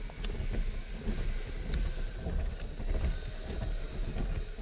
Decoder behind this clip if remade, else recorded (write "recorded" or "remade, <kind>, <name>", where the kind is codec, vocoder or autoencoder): recorded